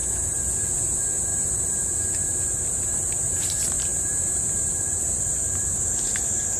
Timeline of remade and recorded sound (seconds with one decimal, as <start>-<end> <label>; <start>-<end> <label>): 0.0-0.8 recorded; 0.8-6.6 remade